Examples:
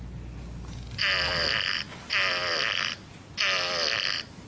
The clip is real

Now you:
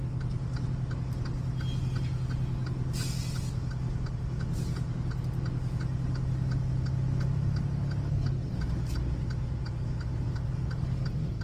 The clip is real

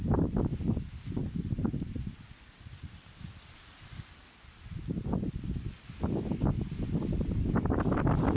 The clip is real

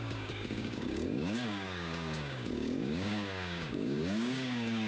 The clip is fake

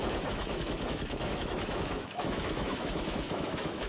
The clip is fake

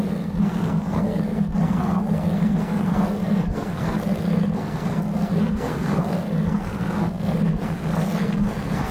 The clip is fake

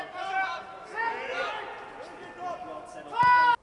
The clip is real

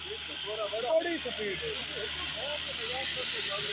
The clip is real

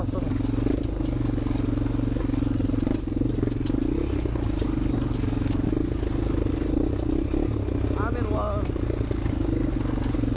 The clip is real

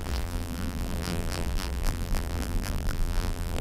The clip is fake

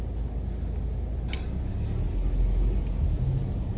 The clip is real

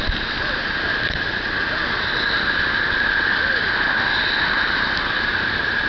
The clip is real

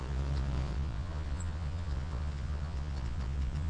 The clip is fake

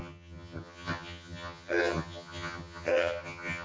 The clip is fake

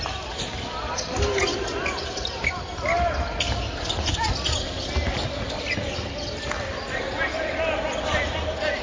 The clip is real